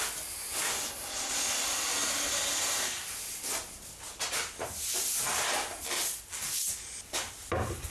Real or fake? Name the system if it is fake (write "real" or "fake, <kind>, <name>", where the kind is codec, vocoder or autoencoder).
real